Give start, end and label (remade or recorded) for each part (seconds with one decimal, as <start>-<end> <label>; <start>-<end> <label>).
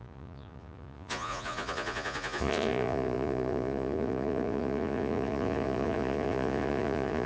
0.0-7.3 remade